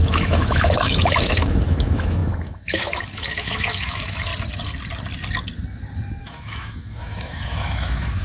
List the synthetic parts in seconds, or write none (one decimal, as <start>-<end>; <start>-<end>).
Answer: 0.0-4.3; 6.2-8.2